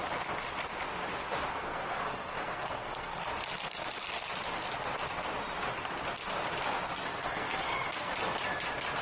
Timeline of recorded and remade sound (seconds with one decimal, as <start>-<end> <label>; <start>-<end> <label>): 0.0-1.5 recorded; 1.5-3.3 remade; 3.3-7.2 recorded; 7.2-8.1 remade; 8.1-9.0 recorded